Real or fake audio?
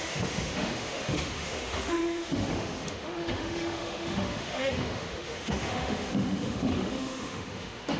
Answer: fake